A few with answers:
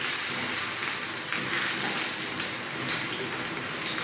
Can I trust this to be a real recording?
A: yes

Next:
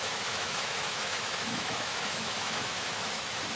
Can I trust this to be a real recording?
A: no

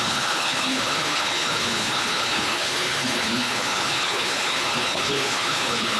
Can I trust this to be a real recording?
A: no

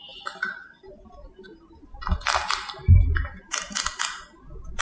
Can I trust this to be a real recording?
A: yes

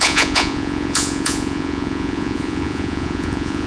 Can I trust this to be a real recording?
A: no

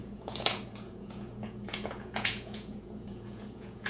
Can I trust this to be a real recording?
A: no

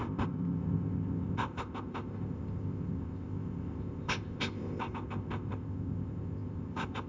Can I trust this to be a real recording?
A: no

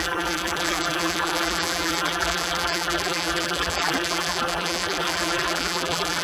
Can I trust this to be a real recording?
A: no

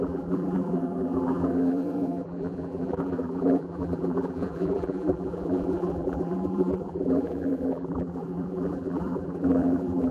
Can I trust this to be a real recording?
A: no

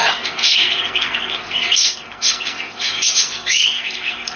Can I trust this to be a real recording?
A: no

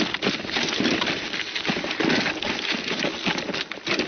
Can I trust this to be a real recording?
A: yes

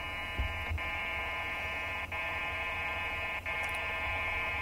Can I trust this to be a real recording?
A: yes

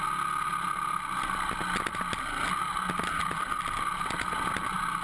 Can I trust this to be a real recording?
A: yes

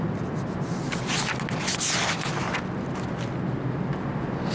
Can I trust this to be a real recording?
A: yes